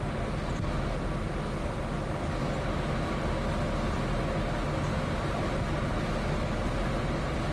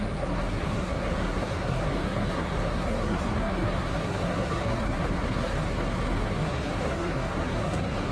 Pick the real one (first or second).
first